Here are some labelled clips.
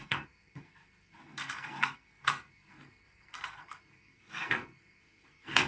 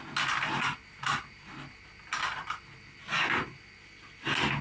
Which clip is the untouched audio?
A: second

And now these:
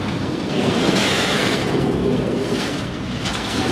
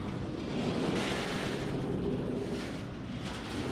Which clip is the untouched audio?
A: second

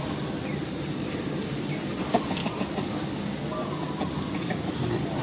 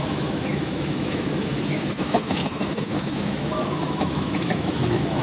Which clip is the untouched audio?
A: first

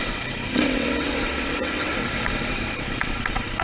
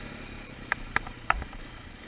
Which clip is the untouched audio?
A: second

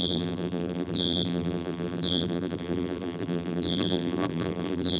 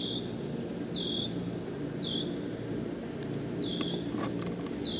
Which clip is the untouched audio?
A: second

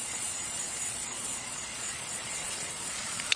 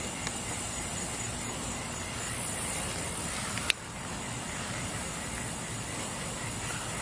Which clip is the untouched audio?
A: second